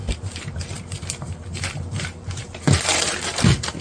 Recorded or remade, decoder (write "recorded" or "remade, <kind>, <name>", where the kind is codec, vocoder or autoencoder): remade, vocoder, BigVGAN v2